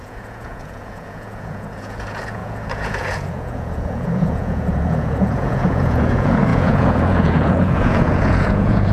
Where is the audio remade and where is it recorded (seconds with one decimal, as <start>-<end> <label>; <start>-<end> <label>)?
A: 0.0-8.9 remade